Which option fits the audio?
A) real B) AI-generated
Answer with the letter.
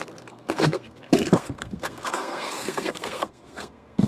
B